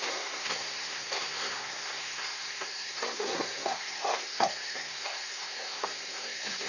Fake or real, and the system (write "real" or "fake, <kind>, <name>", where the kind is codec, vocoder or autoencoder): fake, codec, SNAC